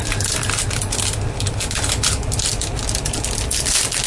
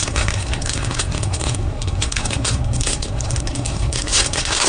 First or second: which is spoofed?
second